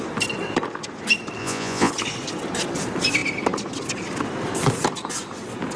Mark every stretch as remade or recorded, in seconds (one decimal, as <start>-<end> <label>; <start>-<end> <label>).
0.0-1.4 recorded; 1.4-1.9 remade; 1.9-5.8 recorded